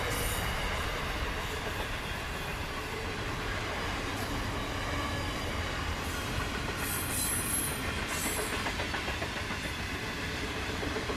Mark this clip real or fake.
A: real